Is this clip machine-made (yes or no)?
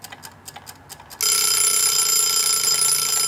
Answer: no